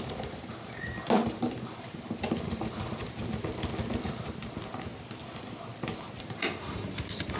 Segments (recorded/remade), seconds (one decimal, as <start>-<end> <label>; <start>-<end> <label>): 0.0-3.2 remade; 3.2-4.0 recorded; 4.0-4.9 remade; 4.9-6.2 recorded; 6.2-7.4 remade